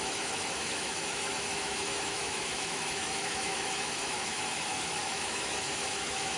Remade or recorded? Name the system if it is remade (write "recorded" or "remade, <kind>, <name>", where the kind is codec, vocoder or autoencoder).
remade, autoencoder, DAC-VAE